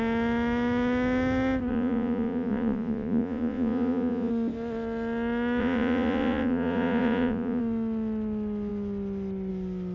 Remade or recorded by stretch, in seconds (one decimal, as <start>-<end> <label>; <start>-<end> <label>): 0.0-1.7 recorded; 1.7-4.3 remade; 4.3-5.6 recorded; 5.6-7.6 remade; 7.6-9.9 recorded